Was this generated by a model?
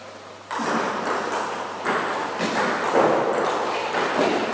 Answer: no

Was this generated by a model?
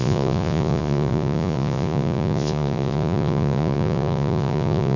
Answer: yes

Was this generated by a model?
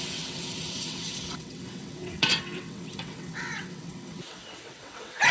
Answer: yes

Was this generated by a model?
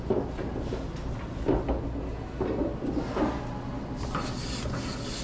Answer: no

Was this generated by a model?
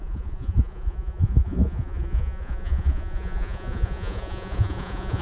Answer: yes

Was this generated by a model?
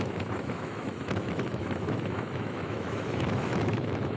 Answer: yes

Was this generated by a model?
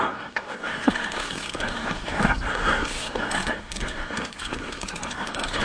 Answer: yes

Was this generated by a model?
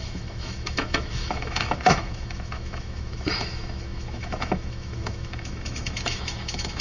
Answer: yes